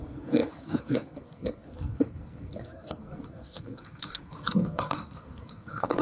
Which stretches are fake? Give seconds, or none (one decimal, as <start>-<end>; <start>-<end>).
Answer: 0.0-6.0